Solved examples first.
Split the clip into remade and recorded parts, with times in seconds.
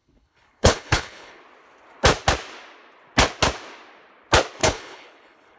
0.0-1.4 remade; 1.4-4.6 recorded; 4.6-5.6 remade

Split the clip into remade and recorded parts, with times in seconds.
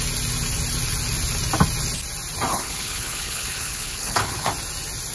0.0-2.5 recorded; 2.5-4.5 remade; 4.5-5.1 recorded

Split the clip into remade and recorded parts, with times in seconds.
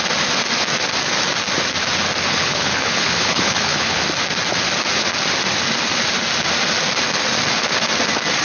0.0-2.3 recorded; 2.3-4.0 remade; 4.0-8.4 recorded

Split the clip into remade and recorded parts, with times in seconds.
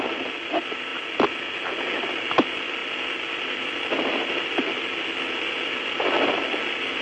0.0-7.0 recorded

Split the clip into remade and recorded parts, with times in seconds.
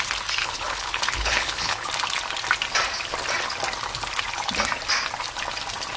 0.0-0.4 recorded; 0.4-1.9 remade; 1.9-6.0 recorded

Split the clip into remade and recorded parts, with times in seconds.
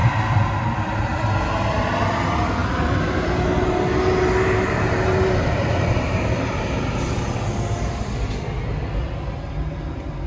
0.0-10.3 recorded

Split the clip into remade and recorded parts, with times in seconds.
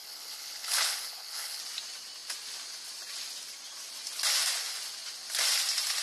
0.0-1.6 remade; 1.6-6.0 recorded